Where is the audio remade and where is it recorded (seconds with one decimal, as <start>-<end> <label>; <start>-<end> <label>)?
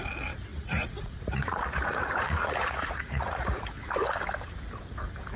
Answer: 0.0-0.5 recorded; 0.5-3.7 remade; 3.7-5.4 recorded